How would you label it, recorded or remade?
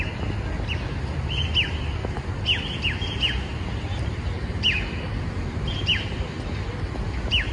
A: recorded